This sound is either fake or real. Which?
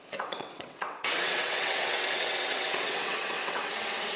fake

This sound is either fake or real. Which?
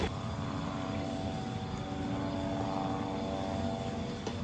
real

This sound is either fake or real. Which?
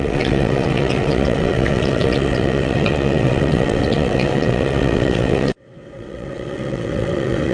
fake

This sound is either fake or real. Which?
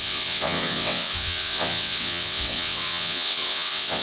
fake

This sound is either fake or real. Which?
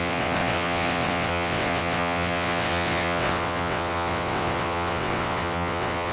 fake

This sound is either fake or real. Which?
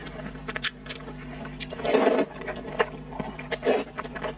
real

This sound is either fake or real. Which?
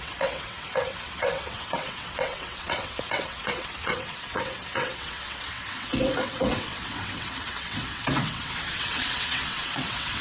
fake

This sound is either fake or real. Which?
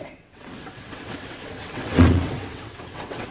fake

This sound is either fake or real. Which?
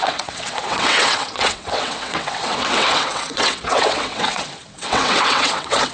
fake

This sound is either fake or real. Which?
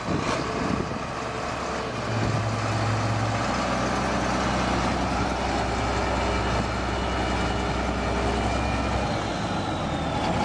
real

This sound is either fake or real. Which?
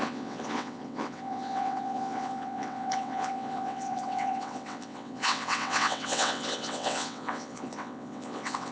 fake